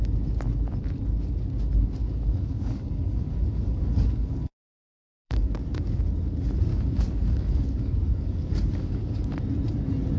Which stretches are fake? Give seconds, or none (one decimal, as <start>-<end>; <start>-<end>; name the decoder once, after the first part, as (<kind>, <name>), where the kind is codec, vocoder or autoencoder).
2.0-6.0 (codec, DAC); 6.7-9.3